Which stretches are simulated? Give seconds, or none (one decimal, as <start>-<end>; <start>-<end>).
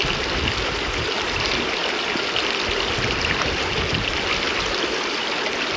none